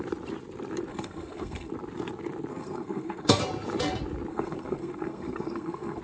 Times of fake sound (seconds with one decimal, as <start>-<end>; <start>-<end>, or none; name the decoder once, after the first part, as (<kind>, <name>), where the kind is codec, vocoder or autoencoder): 0.9-1.7 (codec, SNAC); 2.5-3.4; 4.3-6.0